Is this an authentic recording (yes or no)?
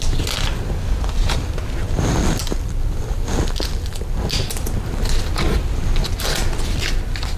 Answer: yes